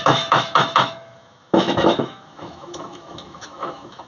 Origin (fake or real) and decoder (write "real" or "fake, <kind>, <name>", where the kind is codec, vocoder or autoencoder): fake, autoencoder, DAC-VAE